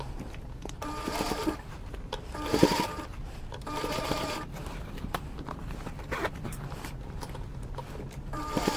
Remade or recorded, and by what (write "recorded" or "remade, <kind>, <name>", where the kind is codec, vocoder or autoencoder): remade, vocoder, BigVGAN v2